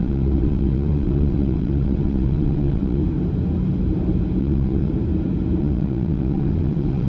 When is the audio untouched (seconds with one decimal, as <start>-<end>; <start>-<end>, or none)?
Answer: 3.0-4.4; 4.9-5.6